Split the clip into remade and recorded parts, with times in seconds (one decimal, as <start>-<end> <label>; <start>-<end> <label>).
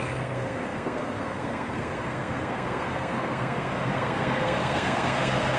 0.0-5.6 remade